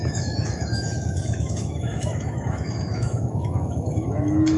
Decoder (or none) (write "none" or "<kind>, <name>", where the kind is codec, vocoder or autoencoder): autoencoder, DAC-VAE